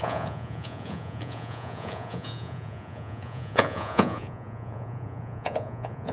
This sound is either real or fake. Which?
fake